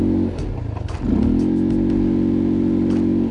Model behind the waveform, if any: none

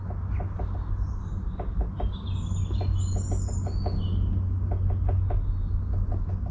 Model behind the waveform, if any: none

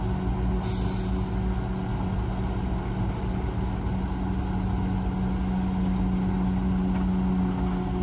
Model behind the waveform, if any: none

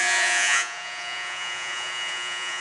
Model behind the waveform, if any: vocoder, Vocos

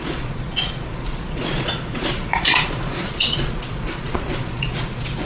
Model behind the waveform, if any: vocoder, Vocos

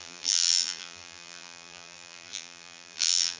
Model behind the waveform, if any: vocoder, BigVGAN v2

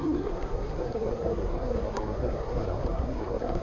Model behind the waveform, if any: codec, SNAC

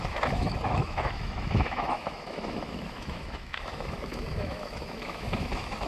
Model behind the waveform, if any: autoencoder, DAC-VAE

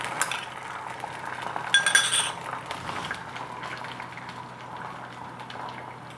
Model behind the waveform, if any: none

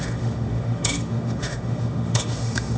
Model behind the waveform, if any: autoencoder, DAC-VAE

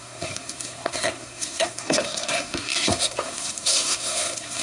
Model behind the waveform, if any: codec, SNAC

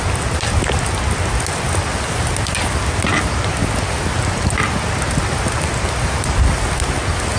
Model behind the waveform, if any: none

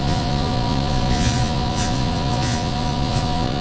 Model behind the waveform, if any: vocoder, Vocos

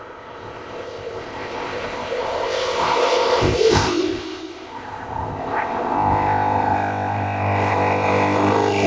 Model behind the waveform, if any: codec, ZipCodec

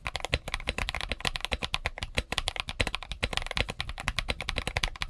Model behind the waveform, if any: none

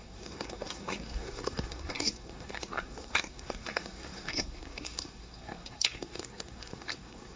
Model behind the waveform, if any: codec, SNAC